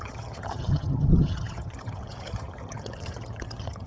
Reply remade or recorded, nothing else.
remade